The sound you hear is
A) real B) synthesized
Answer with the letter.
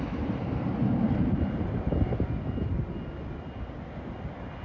A